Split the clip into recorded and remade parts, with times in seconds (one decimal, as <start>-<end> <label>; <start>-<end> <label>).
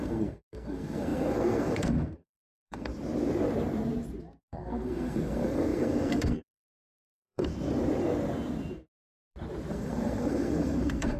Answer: 0.0-2.9 remade; 2.9-4.4 recorded; 4.4-7.5 remade; 7.5-9.7 recorded; 9.7-11.2 remade